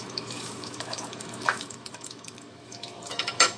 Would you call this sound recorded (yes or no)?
no